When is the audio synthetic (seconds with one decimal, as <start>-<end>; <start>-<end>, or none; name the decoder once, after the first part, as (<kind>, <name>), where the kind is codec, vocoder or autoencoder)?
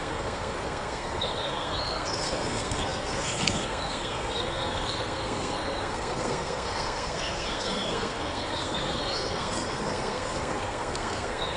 0.0-11.6 (codec, SNAC)